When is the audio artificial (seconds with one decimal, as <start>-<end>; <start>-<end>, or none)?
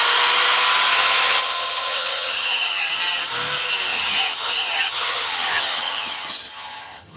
0.9-2.9; 3.9-7.2